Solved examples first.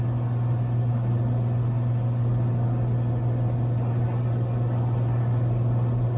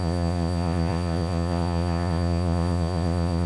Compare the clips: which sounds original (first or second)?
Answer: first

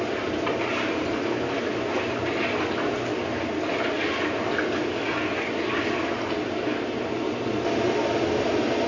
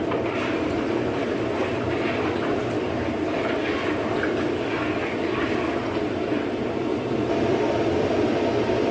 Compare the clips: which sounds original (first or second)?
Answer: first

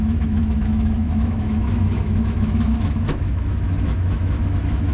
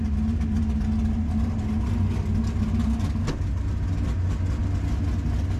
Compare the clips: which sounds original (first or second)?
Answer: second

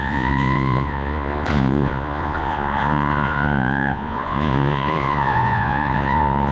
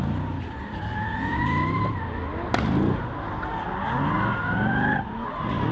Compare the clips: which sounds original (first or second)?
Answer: second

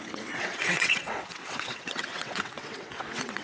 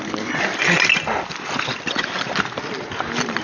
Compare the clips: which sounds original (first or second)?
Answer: second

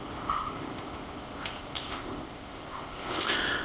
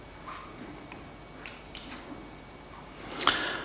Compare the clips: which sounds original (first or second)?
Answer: second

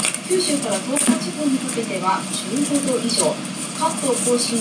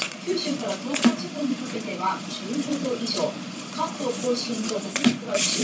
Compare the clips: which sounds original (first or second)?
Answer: first